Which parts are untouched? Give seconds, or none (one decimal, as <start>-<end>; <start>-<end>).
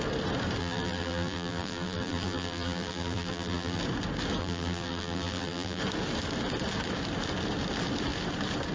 0.0-0.6; 3.8-4.4; 5.8-8.7